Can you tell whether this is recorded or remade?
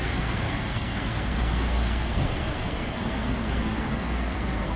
remade